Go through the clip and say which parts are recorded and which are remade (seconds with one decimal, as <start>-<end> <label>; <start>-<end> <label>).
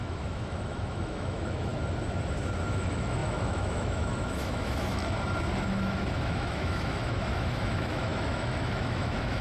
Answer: 0.0-1.7 remade; 1.7-2.8 recorded; 2.8-5.0 remade; 5.0-5.7 recorded; 5.7-9.4 remade